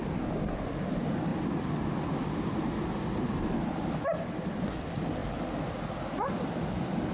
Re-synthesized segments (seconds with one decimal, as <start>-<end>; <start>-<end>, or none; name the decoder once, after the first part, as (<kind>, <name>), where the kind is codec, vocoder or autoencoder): none